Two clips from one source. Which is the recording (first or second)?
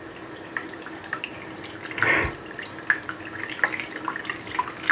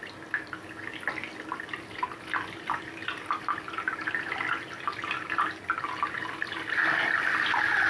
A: second